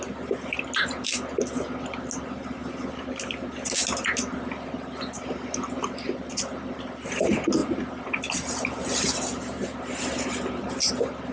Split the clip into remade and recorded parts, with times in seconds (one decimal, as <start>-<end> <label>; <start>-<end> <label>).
0.0-11.3 recorded